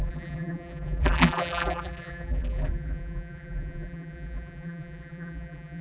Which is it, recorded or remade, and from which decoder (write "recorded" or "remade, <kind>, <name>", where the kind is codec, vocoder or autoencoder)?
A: remade, vocoder, BigVGAN v2